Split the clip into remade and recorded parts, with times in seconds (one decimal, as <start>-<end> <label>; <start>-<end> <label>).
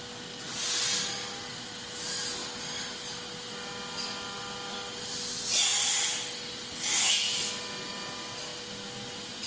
0.0-9.5 recorded